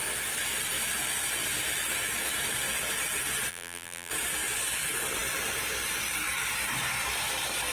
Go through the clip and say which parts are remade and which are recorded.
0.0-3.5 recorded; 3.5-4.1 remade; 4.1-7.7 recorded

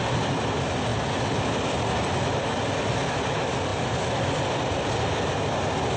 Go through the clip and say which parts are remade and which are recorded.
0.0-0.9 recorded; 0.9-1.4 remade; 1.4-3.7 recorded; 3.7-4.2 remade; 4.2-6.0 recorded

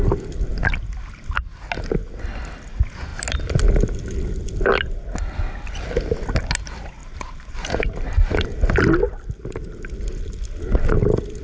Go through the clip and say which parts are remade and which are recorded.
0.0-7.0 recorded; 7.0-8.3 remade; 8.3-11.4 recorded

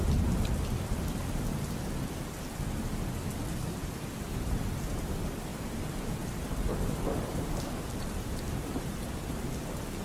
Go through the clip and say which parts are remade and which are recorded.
0.0-5.5 recorded; 5.5-9.5 remade; 9.5-10.0 recorded

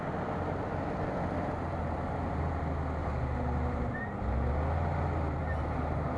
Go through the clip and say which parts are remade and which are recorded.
0.0-1.8 recorded; 1.8-2.6 remade; 2.6-3.0 recorded; 3.0-4.0 remade; 4.0-5.4 recorded; 5.4-6.2 remade

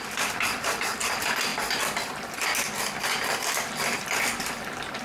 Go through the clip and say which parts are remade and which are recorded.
0.0-5.0 remade

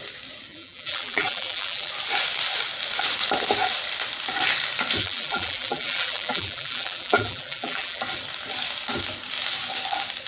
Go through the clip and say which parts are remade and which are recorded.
0.0-0.5 recorded; 0.5-1.9 remade; 1.9-5.0 recorded; 5.0-8.0 remade; 8.0-10.3 recorded